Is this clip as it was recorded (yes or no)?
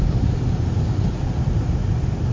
yes